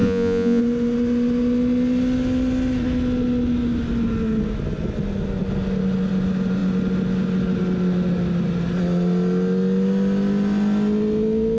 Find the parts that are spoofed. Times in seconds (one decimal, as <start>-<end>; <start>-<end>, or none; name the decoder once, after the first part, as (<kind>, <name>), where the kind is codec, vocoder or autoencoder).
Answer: 0.0-0.6 (vocoder, Vocos)